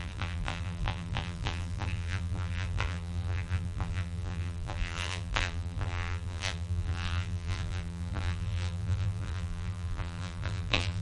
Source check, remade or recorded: remade